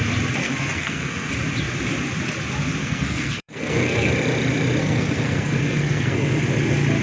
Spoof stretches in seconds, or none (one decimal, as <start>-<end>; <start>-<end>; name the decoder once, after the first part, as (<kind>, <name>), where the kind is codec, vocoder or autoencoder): 0.4-1.3 (codec, SNAC); 2.8-4.1; 4.8-6.4